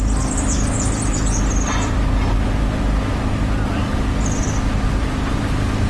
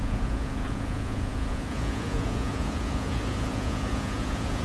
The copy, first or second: second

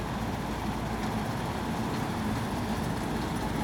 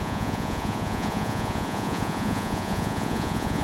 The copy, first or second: second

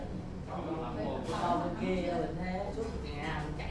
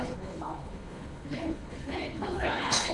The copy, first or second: second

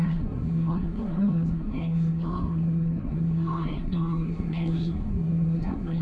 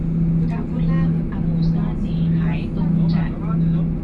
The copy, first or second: first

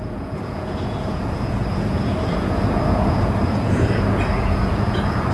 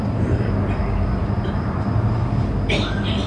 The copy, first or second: first